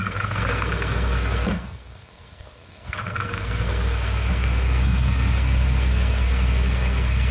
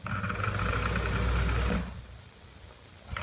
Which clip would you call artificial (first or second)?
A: first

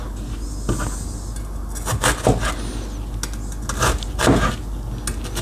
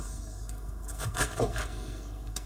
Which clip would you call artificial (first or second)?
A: second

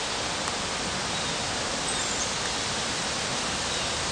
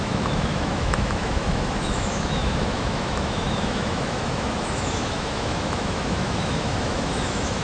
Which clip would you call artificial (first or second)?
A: second